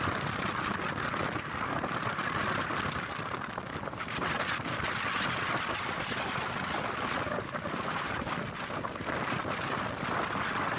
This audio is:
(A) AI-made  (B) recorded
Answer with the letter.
B